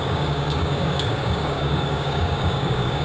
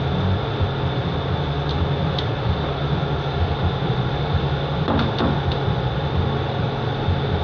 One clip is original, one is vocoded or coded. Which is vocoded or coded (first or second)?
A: first